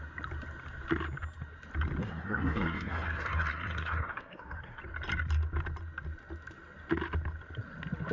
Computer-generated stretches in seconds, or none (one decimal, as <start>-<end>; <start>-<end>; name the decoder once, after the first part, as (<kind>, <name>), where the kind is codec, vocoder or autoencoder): 2.0-4.8 (codec, SNAC)